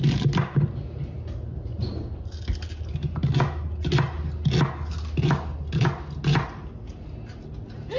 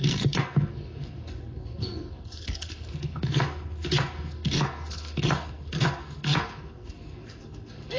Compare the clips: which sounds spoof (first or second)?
second